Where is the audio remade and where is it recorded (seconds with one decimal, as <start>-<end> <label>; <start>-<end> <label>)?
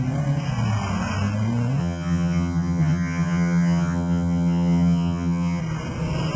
0.0-1.8 recorded; 1.8-5.6 remade; 5.6-6.4 recorded